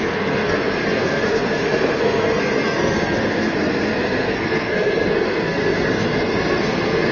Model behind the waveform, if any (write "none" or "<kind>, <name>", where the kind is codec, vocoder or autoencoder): codec, SNAC